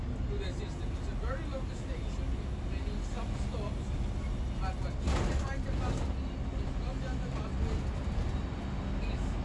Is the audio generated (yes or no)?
no